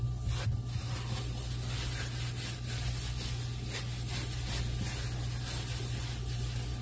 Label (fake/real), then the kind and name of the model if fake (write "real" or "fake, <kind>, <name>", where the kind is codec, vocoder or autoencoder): real